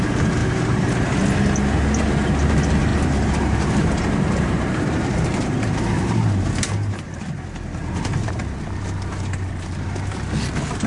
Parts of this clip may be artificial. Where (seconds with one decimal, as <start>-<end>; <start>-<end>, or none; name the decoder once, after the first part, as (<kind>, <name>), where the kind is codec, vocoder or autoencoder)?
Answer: 0.4-1.2 (vocoder, BigVGAN v2); 2.9-7.2; 7.8-8.4